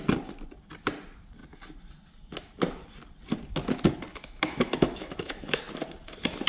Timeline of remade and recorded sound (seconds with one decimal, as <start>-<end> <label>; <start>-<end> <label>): 0.0-4.1 recorded; 4.1-5.6 remade; 5.6-6.5 recorded